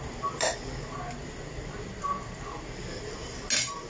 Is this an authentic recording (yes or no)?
yes